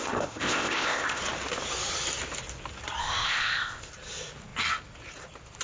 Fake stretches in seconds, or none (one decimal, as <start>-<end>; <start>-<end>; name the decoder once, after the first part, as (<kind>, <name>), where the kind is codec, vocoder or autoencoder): 0.0-1.2 (codec, ZipCodec); 3.0-3.9